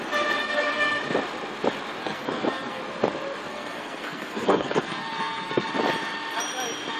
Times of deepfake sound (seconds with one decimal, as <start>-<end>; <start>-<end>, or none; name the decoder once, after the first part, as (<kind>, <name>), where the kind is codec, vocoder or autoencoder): 0.4-1.0 (codec, SNAC); 2.0-2.8; 3.5-5.7